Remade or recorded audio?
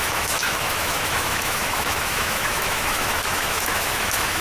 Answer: remade